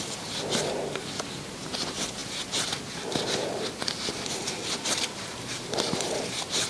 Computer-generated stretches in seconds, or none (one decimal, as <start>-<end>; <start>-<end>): none

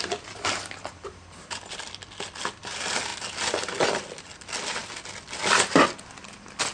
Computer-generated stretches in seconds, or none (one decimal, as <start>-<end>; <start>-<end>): none

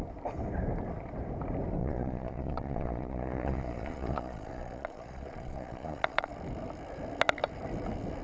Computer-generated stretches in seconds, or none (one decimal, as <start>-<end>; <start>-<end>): 1.8-6.3

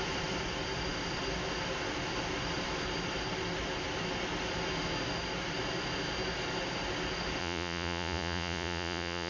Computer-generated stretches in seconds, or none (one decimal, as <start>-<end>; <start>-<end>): 7.4-9.3

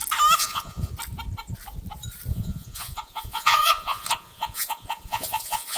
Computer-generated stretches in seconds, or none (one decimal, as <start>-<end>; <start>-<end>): 0.4-0.9; 2.3-5.8